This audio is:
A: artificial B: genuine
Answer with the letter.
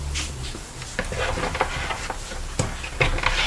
B